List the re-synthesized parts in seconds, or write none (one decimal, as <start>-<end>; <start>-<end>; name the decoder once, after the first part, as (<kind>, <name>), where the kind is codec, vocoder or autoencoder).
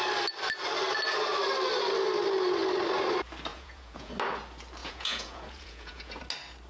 3.5-4.1 (vocoder, Vocos); 4.8-6.2